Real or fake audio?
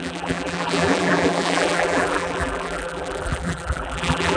fake